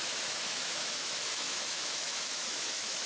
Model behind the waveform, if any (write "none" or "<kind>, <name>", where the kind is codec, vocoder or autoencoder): autoencoder, DAC-VAE